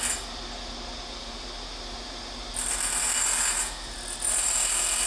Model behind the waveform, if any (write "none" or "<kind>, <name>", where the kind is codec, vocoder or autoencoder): none